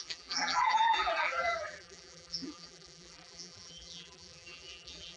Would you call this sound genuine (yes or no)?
no